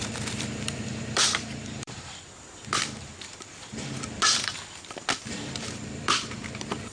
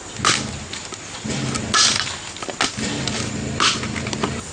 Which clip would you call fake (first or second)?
first